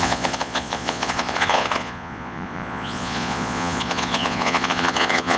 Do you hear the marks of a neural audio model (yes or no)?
yes